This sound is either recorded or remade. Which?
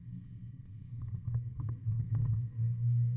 remade